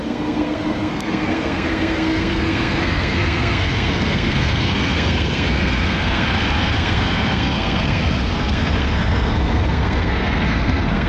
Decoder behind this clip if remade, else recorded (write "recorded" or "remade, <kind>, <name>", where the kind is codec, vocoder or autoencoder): remade, codec, SNAC